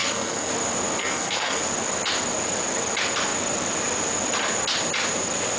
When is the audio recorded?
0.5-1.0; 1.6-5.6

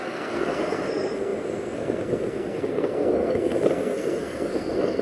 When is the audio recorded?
none